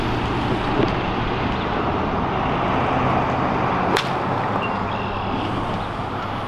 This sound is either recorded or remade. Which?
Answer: recorded